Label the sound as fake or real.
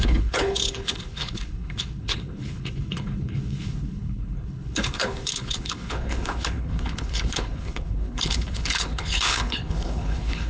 fake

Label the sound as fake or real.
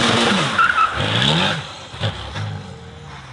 real